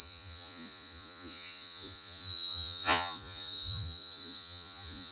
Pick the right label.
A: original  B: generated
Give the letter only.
B